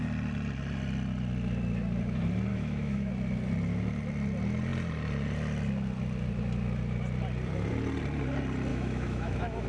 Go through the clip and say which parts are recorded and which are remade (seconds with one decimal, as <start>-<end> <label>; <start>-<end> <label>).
0.0-2.5 recorded; 2.5-3.1 remade; 3.1-8.7 recorded; 8.7-9.7 remade